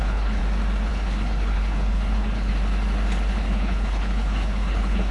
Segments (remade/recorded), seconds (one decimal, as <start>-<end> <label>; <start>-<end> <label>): 0.0-0.4 remade; 0.4-0.9 recorded; 0.9-2.5 remade; 2.5-3.3 recorded; 3.3-5.1 remade